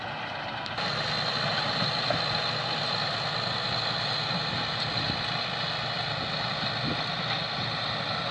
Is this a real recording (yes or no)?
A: yes